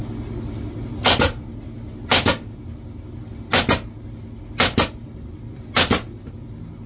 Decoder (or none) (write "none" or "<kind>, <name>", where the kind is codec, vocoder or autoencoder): none